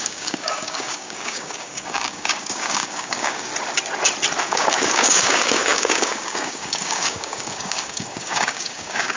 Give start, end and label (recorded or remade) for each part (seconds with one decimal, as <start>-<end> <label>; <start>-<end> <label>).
0.0-3.5 remade; 3.5-4.4 recorded; 4.4-9.2 remade